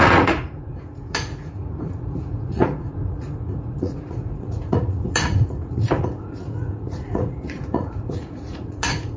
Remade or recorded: remade